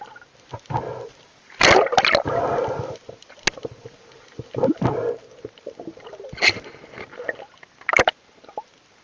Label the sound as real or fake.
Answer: real